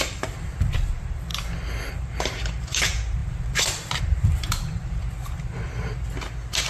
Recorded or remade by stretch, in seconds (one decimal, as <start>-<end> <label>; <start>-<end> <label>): 0.0-1.3 remade; 1.3-1.9 recorded; 1.9-5.0 remade; 5.0-6.7 recorded

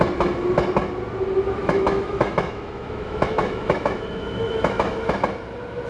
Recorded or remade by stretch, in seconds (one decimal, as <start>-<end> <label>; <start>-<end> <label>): 0.0-1.6 recorded; 1.6-5.1 remade; 5.1-5.9 recorded

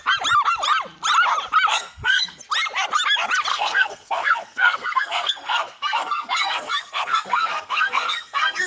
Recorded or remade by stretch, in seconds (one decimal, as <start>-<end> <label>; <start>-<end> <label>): 0.0-1.7 recorded; 1.7-2.4 remade; 2.4-3.5 recorded; 3.5-8.7 remade

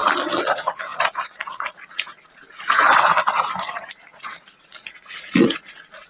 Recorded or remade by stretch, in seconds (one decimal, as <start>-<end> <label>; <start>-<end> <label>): 0.0-0.5 recorded; 0.5-6.1 remade

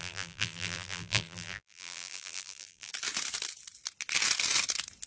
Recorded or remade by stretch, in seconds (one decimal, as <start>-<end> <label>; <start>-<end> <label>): 0.0-2.9 remade; 2.9-5.1 recorded